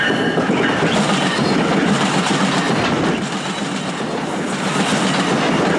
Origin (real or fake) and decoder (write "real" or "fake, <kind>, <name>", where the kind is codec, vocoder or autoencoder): real